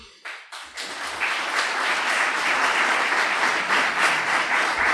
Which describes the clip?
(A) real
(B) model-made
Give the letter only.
A